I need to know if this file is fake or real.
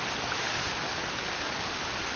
real